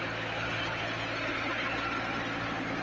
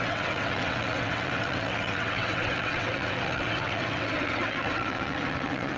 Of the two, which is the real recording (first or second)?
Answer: first